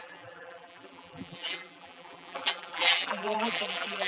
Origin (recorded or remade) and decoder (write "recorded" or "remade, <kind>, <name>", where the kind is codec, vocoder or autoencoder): remade, vocoder, BigVGAN v2